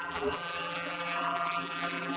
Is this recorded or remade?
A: remade